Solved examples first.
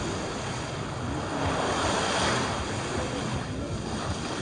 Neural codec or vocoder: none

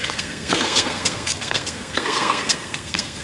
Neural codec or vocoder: codec, SNAC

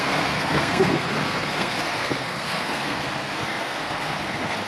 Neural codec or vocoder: codec, SNAC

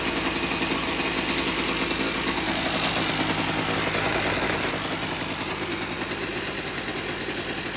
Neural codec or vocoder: none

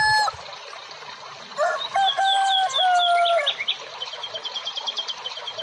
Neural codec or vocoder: none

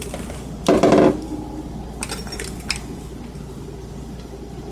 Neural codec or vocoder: none